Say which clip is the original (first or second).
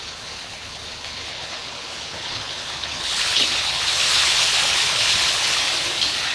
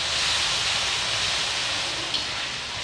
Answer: second